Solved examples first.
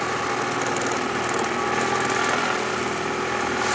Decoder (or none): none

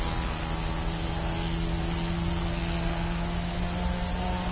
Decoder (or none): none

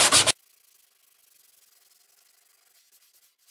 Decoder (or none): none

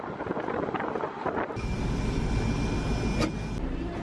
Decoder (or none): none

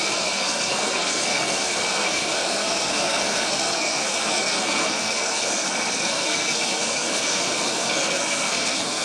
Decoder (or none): codec, SNAC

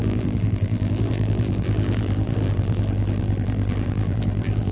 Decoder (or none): vocoder, BigVGAN v2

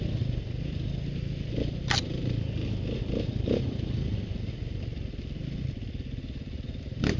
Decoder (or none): none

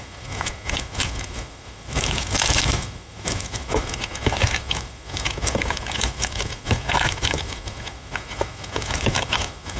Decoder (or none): autoencoder, DAC-VAE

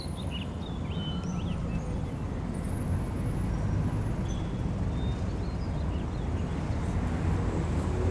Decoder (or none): none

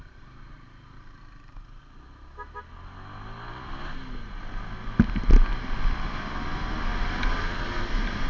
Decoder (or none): none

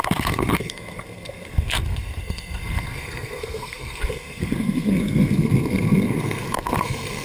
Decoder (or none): codec, SNAC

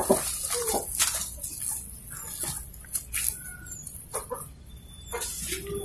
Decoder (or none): none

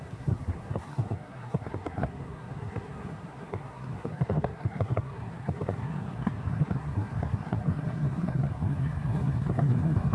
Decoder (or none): codec, SNAC